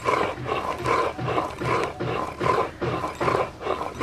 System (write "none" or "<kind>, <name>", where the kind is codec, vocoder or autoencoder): none